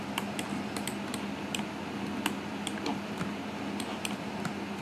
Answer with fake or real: real